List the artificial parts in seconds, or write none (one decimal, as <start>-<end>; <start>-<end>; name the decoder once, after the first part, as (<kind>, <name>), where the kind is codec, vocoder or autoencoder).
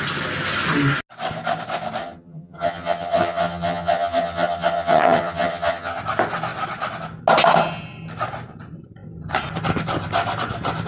2.0-6.0 (vocoder, HiFi-GAN)